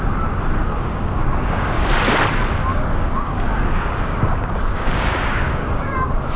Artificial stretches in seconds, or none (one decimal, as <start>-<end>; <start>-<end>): 0.7-1.9; 2.7-6.4